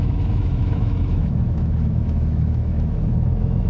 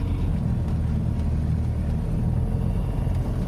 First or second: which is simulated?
first